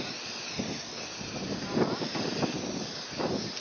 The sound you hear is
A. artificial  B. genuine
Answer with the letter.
B